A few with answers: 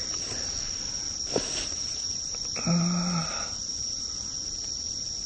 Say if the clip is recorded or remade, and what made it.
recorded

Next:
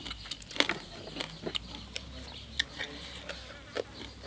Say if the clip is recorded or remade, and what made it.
recorded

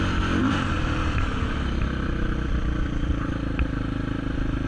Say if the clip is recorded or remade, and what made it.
remade, vocoder, BigVGAN v2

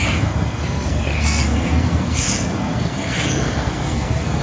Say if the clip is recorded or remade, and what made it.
remade, codec, SNAC